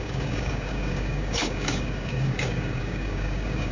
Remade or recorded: remade